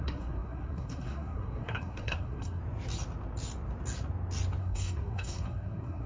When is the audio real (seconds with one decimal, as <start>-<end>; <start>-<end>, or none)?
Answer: 2.6-4.6